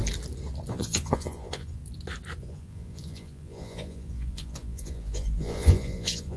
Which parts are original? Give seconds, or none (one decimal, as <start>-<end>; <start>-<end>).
0.0-0.7; 1.8-2.4